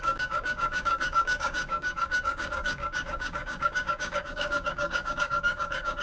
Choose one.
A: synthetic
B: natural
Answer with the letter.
A